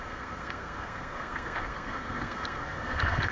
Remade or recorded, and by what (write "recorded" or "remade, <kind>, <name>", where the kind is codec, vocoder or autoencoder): remade, codec, SNAC